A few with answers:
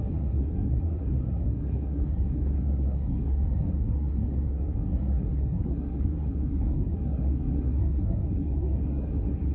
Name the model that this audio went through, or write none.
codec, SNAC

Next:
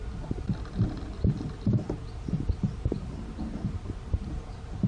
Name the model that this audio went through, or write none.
none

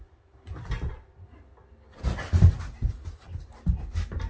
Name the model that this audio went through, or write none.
none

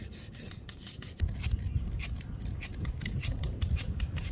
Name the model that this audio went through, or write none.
none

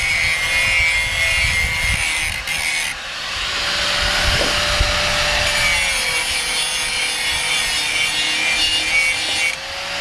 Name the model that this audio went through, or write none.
none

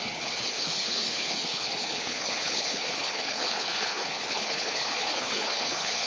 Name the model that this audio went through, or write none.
codec, HILCodec